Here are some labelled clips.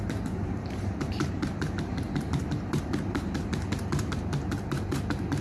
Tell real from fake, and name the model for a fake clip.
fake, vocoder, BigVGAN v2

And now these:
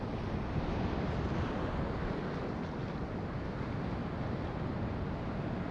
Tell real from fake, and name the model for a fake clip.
real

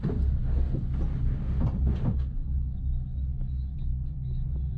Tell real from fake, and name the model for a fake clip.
real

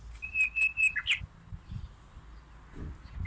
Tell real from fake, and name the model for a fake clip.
real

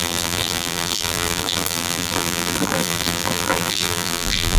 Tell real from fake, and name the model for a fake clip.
fake, vocoder, BigVGAN v2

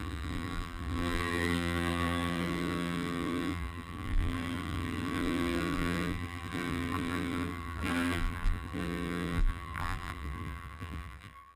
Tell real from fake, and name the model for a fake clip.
fake, vocoder, BigVGAN v2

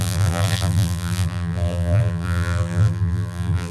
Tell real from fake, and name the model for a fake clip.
fake, vocoder, BigVGAN v2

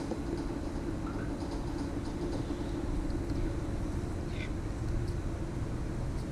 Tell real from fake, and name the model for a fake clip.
real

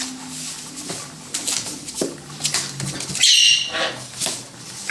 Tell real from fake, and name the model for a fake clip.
real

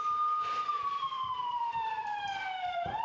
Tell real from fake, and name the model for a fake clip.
fake, vocoder, BigVGAN v2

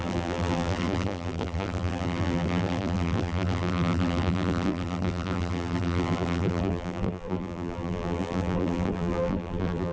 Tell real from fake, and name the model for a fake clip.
fake, vocoder, BigVGAN v2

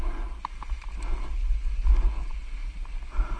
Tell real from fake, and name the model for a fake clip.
real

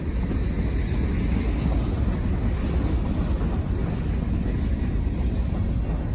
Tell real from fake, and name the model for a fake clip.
real